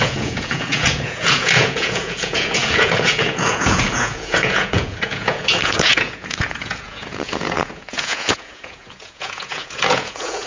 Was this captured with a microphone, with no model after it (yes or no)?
no